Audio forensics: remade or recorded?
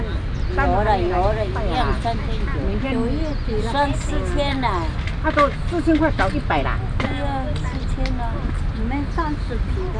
recorded